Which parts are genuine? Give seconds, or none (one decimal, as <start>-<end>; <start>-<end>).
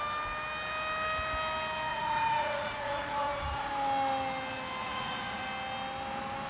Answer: 0.0-1.9; 3.7-4.8; 5.4-6.5